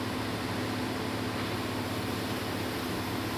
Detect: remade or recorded recorded